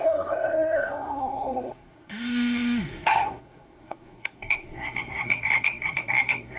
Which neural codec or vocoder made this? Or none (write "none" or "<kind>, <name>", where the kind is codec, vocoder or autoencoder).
codec, SNAC